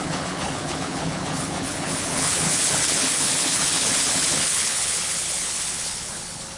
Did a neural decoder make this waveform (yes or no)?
yes